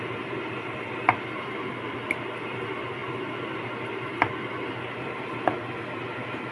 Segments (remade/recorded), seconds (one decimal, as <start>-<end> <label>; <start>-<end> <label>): 0.0-6.5 recorded